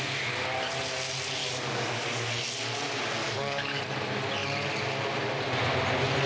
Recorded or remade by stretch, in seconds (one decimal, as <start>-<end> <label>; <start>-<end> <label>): 0.0-1.4 recorded; 1.4-2.4 remade; 2.4-3.2 recorded; 3.2-3.8 remade; 3.8-6.3 recorded